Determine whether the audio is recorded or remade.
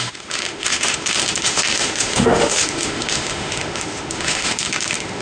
remade